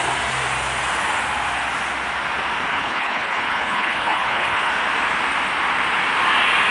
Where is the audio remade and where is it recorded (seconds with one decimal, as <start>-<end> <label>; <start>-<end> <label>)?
0.0-2.7 recorded; 2.7-4.7 remade; 4.7-6.7 recorded